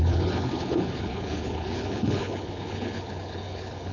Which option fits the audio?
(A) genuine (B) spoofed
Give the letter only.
B